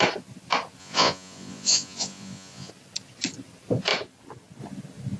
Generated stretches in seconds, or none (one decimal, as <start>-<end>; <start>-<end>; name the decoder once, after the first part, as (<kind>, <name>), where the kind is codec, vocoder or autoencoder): 0.8-2.7 (vocoder, Vocos)